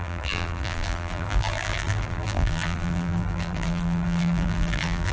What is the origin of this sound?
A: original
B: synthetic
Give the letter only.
B